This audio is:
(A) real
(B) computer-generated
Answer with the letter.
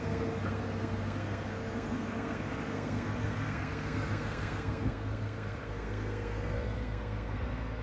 B